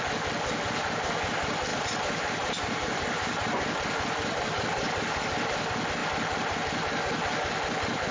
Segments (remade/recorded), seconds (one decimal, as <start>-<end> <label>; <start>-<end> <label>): 0.0-1.7 recorded; 1.7-5.3 remade; 5.3-6.0 recorded; 6.0-6.6 remade; 6.6-8.1 recorded